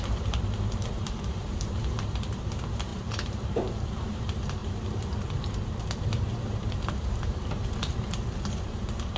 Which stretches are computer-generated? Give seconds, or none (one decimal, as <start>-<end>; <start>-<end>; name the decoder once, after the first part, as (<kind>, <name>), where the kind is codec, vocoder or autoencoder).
0.0-9.2 (vocoder, BigVGAN v2)